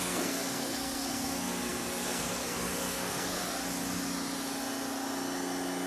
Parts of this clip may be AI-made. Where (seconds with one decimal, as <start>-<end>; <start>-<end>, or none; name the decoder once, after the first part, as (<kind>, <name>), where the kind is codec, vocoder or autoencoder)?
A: 0.0-3.4 (codec, SNAC)